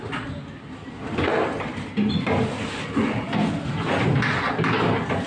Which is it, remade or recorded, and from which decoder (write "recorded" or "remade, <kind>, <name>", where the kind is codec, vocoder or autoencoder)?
recorded